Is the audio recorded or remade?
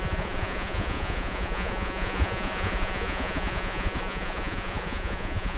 remade